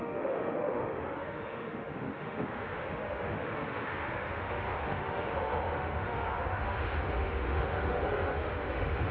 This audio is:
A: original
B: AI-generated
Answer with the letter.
B